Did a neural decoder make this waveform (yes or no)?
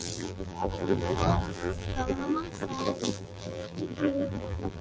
yes